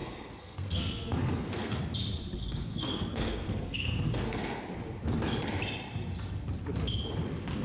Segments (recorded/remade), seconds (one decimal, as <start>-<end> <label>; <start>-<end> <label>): 0.0-1.8 remade; 1.8-2.7 recorded; 2.7-4.6 remade; 4.6-7.6 recorded